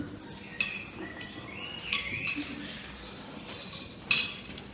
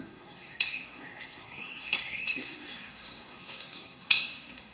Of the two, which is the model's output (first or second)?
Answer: second